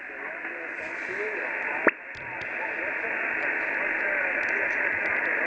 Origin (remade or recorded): recorded